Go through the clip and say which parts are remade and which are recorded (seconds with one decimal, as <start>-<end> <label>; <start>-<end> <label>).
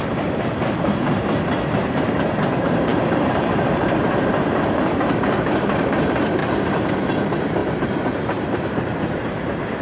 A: 0.0-9.8 remade